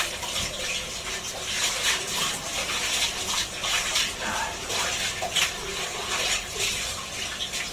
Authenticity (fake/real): real